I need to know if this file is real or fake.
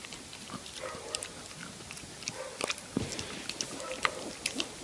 real